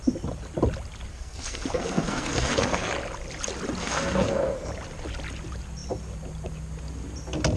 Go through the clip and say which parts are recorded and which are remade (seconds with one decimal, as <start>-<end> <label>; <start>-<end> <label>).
0.0-1.1 recorded; 1.1-2.9 remade; 2.9-3.8 recorded; 3.8-4.7 remade; 4.7-7.6 recorded